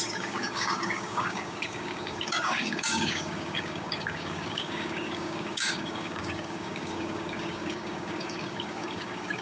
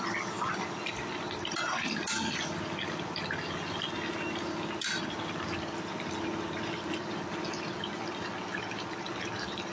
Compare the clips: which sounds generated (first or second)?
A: first